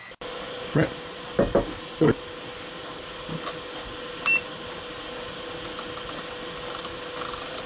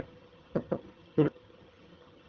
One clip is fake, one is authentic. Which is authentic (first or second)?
first